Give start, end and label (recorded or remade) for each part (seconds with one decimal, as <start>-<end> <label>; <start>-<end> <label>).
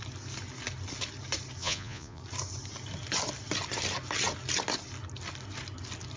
0.0-1.6 recorded; 1.6-2.2 remade; 2.2-6.2 recorded